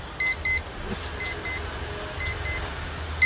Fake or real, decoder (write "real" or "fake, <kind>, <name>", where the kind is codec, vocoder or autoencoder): real